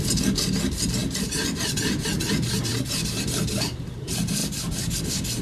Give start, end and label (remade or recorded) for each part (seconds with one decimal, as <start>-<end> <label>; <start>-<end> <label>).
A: 0.0-1.0 recorded; 1.0-3.4 remade; 3.4-5.4 recorded